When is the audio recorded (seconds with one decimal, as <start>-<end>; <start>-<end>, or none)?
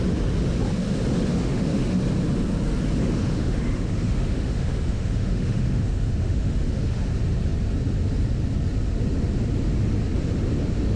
0.0-1.3; 2.0-3.0; 7.0-11.0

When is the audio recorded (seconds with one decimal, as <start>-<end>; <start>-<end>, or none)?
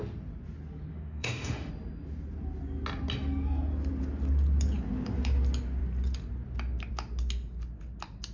0.0-0.9; 1.7-8.3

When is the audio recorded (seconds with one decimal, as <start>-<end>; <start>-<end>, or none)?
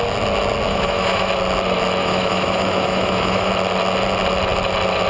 0.0-0.7; 1.3-2.0; 3.5-5.1